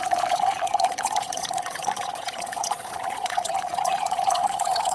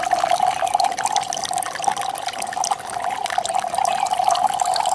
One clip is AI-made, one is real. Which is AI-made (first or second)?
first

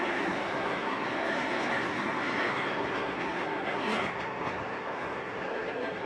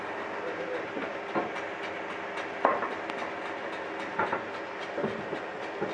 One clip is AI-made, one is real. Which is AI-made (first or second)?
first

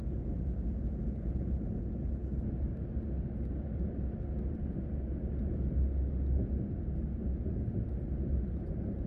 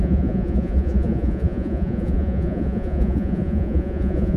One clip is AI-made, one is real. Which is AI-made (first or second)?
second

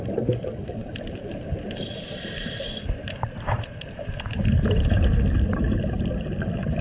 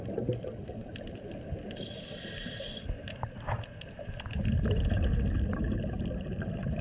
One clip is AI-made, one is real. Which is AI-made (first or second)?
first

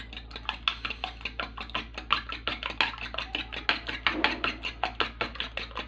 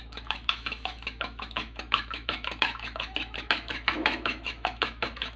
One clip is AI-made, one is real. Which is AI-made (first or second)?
second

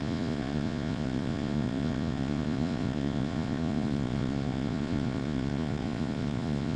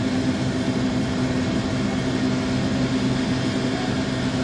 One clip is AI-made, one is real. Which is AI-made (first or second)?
first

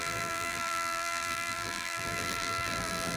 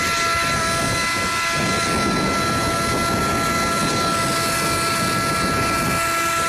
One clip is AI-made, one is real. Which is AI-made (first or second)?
first